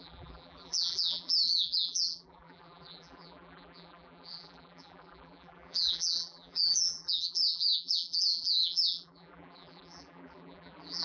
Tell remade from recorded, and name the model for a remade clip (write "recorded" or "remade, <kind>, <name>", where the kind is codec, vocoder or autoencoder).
remade, vocoder, BigVGAN v2